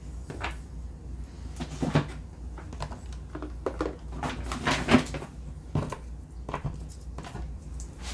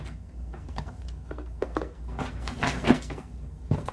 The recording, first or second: first